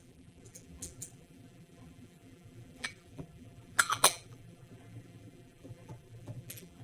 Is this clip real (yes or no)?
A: no